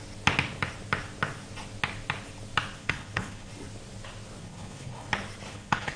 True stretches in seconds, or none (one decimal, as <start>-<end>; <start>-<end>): 0.0-2.8; 3.5-4.4; 5.1-5.5